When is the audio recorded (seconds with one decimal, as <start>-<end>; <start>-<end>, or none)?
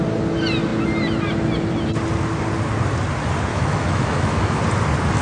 0.0-3.5; 4.6-5.2